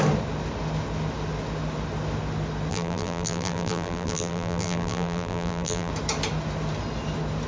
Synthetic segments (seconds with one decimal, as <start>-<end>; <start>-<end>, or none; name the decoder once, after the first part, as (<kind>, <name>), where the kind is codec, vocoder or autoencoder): 2.7-5.9 (vocoder, BigVGAN v2)